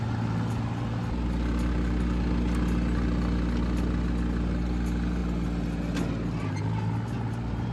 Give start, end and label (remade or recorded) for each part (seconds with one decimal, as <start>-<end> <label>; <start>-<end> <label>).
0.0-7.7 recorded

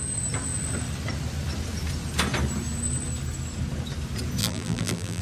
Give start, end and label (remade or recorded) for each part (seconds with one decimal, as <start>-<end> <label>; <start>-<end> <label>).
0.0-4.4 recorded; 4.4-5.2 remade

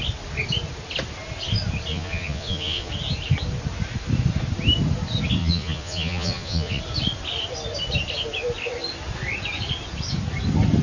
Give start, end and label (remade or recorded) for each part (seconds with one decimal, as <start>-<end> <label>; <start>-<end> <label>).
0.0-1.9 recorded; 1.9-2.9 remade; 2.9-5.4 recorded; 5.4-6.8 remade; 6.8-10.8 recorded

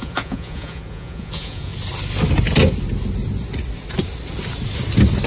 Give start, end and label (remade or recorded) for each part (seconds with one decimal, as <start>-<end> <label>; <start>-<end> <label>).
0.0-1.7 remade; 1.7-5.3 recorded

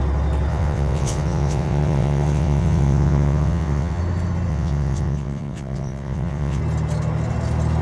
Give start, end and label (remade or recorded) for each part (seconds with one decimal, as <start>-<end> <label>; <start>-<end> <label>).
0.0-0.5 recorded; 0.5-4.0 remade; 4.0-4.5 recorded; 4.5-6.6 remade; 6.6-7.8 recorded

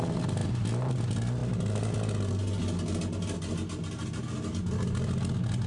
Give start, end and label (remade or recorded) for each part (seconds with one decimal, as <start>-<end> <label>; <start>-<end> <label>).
0.0-5.7 recorded

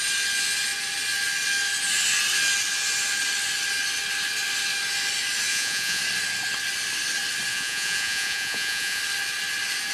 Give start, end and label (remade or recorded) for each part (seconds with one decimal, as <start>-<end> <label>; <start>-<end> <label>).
0.0-5.5 recorded; 5.5-6.0 remade; 6.0-7.5 recorded; 7.5-9.0 remade; 9.0-9.9 recorded

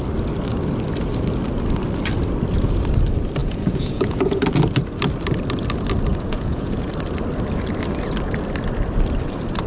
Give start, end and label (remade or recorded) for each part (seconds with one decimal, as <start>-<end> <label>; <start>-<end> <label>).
0.0-3.4 recorded; 3.4-4.4 remade; 4.4-6.1 recorded; 6.1-6.9 remade; 6.9-9.7 recorded